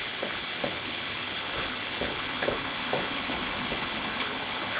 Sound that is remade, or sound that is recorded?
remade